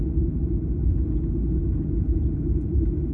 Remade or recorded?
recorded